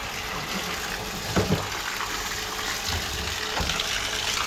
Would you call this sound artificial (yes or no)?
no